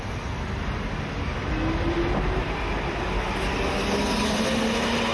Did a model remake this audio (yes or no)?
no